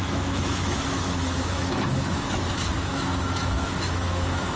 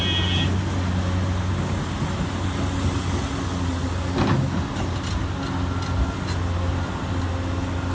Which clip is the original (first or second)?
second